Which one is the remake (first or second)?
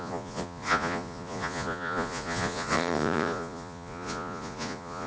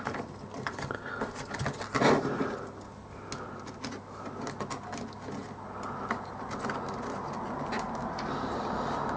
first